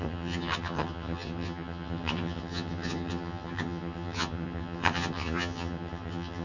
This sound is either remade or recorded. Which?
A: remade